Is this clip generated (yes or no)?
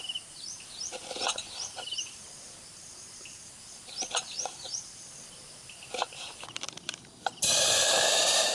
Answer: yes